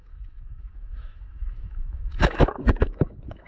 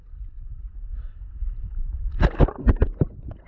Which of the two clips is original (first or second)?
second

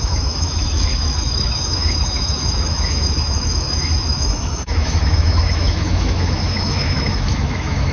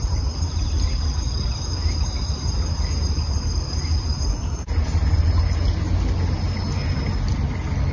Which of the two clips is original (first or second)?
second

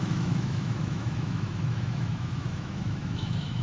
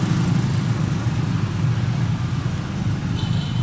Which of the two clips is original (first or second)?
second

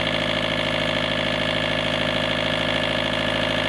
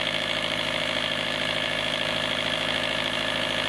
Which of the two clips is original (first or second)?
first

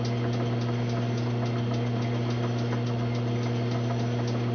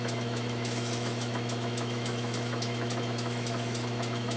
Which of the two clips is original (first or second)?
first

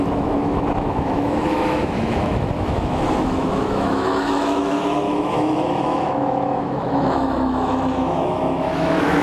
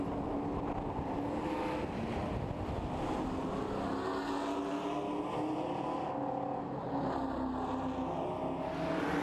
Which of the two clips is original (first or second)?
second